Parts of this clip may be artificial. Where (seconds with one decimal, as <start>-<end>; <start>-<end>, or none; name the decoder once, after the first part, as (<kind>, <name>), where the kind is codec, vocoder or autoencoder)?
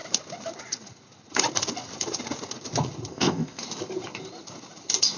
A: 3.1-3.6 (codec, ZipCodec)